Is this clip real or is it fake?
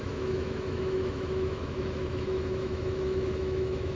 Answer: fake